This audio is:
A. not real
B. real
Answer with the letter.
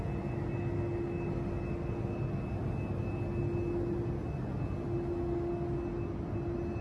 B